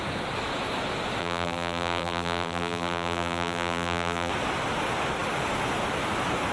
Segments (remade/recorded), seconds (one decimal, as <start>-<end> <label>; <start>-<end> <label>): 0.0-1.2 recorded; 1.2-4.3 remade; 4.3-6.5 recorded